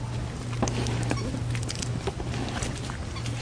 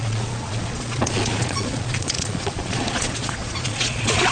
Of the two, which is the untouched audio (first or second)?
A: first